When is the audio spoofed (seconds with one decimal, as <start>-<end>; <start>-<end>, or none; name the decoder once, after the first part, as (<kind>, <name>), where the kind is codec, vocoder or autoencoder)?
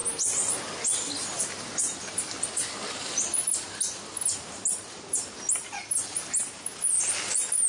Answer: none